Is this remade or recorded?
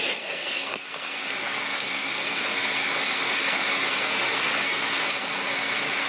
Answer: remade